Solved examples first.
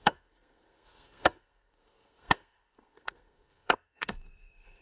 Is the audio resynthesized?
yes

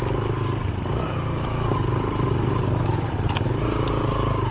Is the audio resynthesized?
no